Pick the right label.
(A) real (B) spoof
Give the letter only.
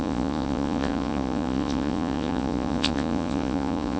B